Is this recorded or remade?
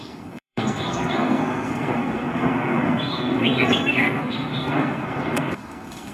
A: remade